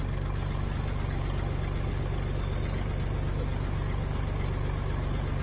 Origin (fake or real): real